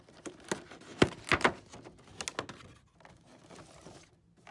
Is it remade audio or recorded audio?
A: recorded